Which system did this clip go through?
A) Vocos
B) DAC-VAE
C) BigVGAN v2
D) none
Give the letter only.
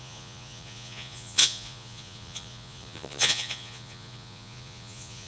A